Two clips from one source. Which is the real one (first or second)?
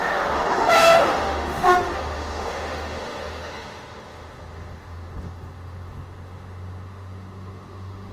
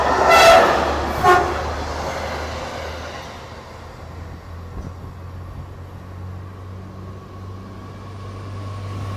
second